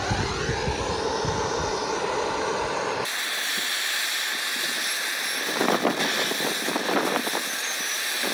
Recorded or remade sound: recorded